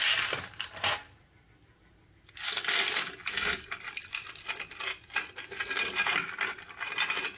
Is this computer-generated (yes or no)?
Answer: no